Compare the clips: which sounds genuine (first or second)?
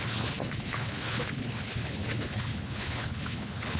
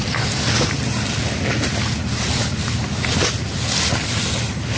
second